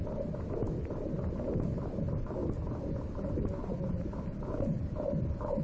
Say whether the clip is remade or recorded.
recorded